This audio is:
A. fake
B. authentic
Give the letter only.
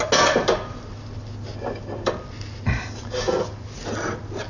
B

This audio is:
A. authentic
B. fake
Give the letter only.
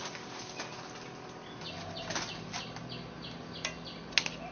A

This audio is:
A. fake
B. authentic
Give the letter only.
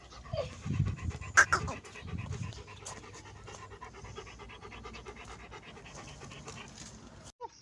B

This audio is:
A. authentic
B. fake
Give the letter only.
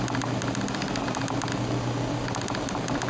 A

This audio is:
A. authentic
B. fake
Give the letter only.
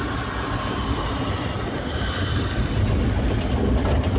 A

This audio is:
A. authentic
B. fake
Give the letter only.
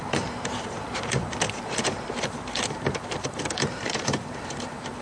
B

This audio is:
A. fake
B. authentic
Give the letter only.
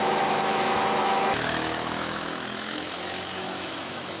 A